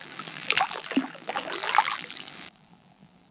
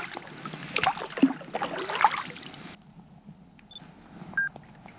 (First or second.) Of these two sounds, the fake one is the first